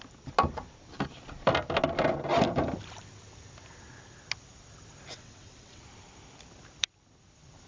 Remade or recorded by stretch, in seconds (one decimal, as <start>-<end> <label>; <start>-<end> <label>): 0.0-5.1 recorded; 5.1-5.8 remade; 5.8-7.7 recorded